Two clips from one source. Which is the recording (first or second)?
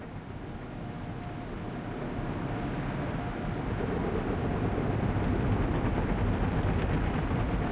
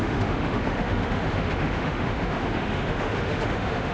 first